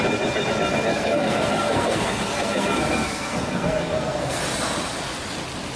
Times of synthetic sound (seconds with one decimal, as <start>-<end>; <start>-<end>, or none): 0.9-4.4